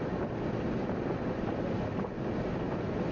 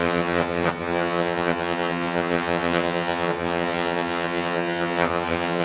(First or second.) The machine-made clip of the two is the second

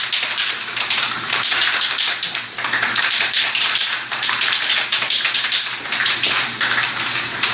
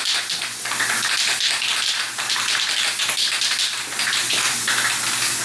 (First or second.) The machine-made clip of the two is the first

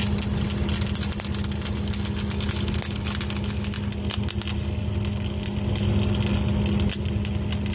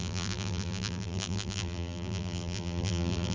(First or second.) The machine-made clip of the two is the second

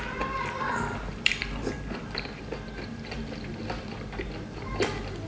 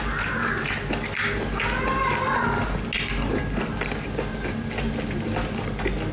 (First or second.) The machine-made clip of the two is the first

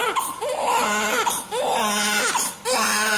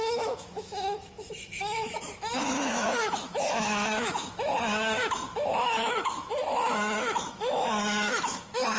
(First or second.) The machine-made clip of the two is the second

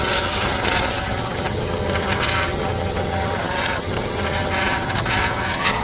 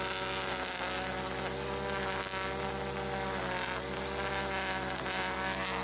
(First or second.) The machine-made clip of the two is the first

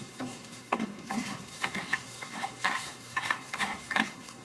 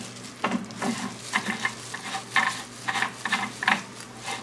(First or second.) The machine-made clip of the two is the first